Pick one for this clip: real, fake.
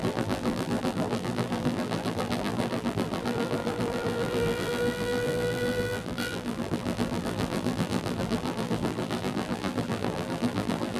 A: fake